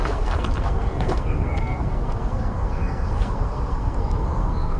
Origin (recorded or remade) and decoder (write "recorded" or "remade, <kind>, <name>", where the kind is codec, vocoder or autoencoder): remade, codec, SNAC